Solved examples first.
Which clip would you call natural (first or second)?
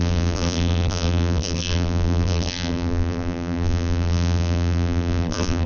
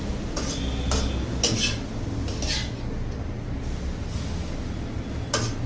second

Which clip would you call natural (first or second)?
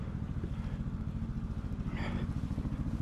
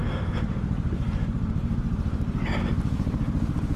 first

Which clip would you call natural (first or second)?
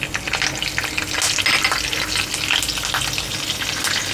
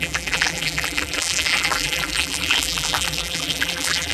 first